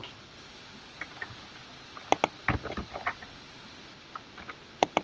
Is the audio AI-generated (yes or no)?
no